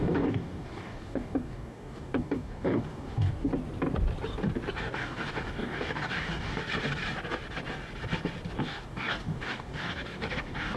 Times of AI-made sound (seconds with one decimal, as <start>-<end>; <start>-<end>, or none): 0.0-3.5; 4.8-6.6; 8.6-10.8